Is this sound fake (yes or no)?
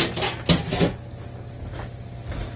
no